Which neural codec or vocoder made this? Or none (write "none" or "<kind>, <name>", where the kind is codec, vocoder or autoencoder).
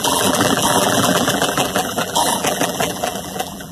vocoder, BigVGAN v2